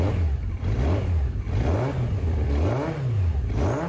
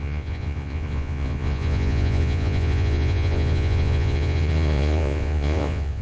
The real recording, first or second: first